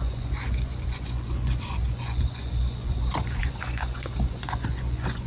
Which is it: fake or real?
fake